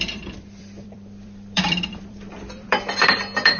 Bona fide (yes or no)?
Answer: no